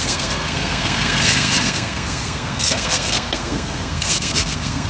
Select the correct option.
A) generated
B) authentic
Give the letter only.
A